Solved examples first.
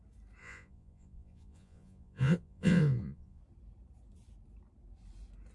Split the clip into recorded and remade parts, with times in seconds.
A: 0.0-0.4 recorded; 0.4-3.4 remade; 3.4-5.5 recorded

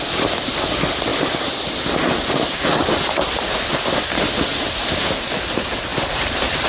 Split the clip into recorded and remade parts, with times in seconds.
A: 0.0-1.1 recorded; 1.1-5.1 remade; 5.1-5.9 recorded; 5.9-6.7 remade

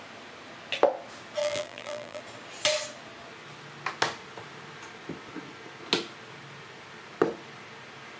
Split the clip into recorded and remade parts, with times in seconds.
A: 0.0-1.4 recorded; 1.4-2.2 remade; 2.2-8.2 recorded

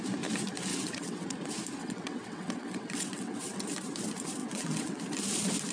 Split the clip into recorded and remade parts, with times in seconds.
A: 0.0-0.7 recorded; 0.7-1.3 remade; 1.3-1.8 recorded; 1.8-3.6 remade; 3.6-4.4 recorded; 4.4-5.0 remade; 5.0-5.7 recorded